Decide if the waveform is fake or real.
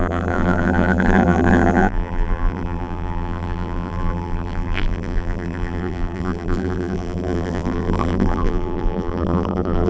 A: fake